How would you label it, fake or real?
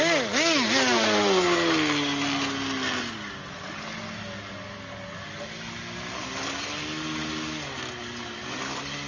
real